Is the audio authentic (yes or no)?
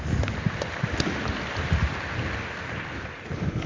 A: yes